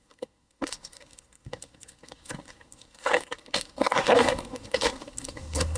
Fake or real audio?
fake